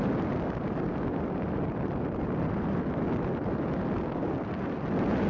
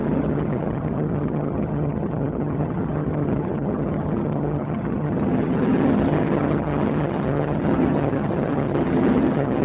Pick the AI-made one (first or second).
second